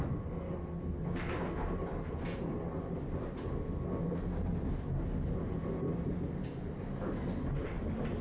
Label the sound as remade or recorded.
recorded